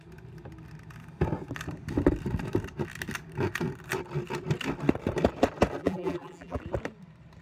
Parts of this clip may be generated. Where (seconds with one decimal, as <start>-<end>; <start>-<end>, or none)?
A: 5.8-6.6

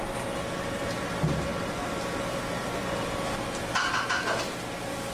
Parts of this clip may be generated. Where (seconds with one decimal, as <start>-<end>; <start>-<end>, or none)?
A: none

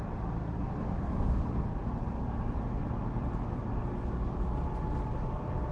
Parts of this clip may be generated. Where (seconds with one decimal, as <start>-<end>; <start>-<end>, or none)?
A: 0.6-3.7

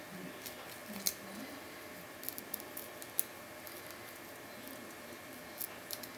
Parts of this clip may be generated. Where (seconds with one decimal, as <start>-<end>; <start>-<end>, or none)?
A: none

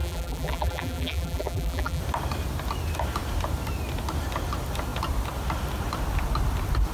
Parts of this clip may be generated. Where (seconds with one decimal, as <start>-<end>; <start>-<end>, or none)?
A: 0.0-2.0

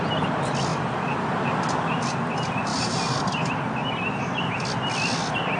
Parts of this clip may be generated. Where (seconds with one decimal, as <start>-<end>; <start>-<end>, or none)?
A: 0.7-1.4; 2.7-4.6

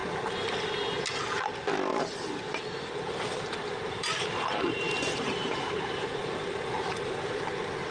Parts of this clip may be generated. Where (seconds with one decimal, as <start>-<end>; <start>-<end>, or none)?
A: 1.9-6.6

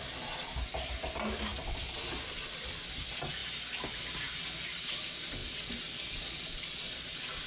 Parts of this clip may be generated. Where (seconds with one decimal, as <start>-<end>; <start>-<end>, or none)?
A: none